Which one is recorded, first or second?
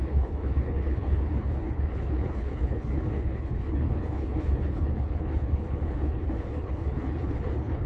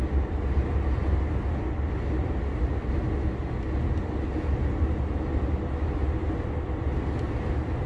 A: second